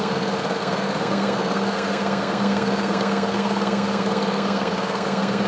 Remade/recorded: remade